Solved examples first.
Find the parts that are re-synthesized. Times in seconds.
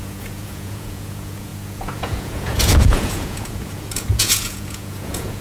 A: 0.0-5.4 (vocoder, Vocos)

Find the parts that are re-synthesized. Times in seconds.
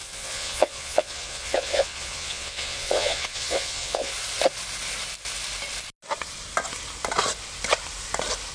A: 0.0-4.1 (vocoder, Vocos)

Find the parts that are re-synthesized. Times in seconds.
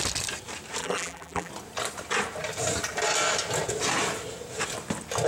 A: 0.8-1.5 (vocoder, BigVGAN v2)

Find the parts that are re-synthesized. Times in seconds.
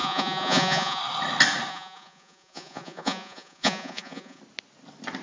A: 0.0-1.0 (vocoder, Vocos); 1.7-4.4